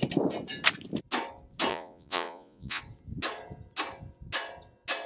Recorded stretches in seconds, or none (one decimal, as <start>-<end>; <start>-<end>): 0.0-1.7; 2.8-5.1